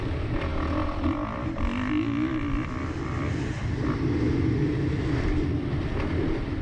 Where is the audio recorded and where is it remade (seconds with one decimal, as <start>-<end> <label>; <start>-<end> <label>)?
0.0-6.6 recorded